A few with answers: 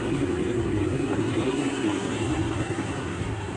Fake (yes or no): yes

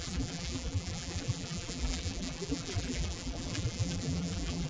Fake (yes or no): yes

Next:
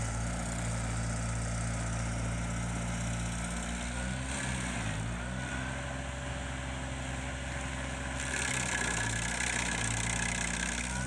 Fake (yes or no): no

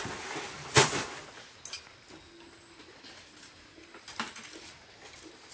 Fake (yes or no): no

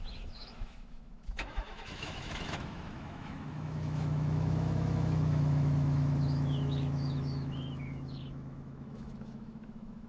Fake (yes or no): yes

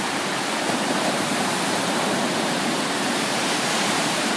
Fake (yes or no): yes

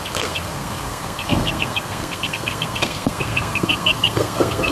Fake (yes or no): yes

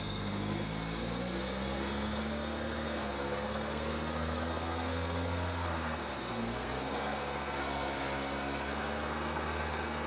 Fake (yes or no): yes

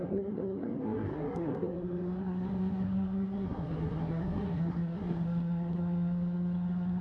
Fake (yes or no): yes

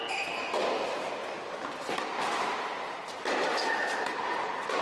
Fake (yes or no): no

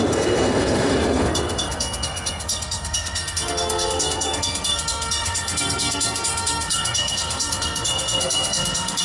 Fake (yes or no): yes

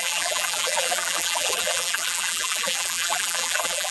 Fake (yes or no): yes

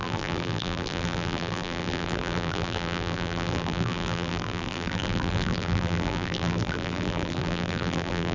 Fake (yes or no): yes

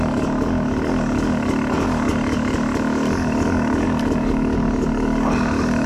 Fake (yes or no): yes